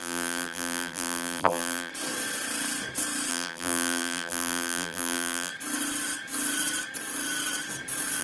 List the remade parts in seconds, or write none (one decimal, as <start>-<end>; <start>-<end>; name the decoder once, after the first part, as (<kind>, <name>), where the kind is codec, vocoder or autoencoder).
0.0-1.9 (vocoder, BigVGAN v2); 3.3-5.5

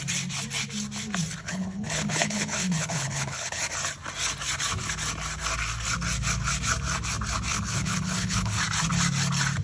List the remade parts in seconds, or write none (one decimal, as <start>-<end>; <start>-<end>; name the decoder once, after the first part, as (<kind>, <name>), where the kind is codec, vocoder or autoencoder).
1.4-3.6 (codec, HILCodec); 7.5-8.6